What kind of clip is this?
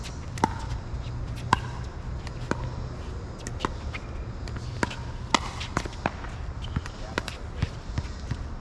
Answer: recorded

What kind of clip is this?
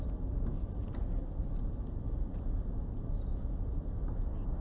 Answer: recorded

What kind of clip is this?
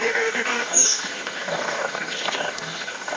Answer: remade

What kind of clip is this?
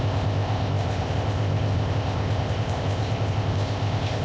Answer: remade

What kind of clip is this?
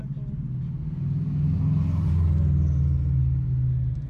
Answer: recorded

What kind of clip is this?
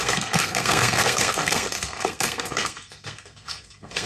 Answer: remade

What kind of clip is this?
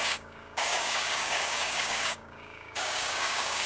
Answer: remade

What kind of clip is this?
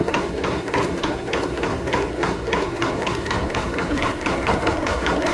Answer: remade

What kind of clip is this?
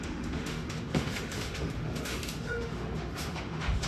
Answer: remade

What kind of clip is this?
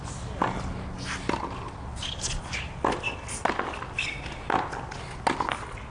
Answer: recorded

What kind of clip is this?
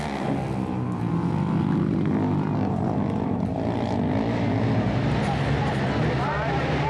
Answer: recorded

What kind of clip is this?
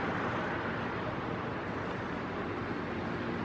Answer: recorded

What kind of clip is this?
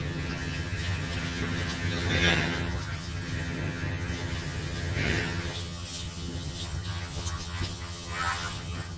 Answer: remade